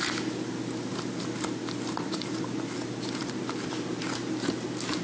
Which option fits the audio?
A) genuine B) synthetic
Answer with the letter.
A